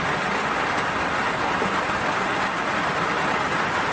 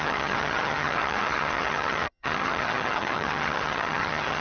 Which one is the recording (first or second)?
first